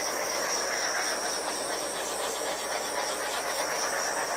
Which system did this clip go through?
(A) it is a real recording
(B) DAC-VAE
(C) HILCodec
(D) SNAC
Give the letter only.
A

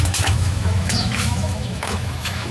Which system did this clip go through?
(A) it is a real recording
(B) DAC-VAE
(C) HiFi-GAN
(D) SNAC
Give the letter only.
B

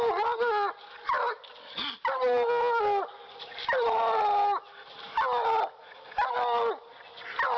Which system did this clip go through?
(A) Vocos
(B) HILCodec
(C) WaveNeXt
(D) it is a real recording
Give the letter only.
D